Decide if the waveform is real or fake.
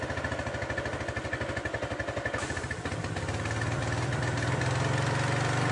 real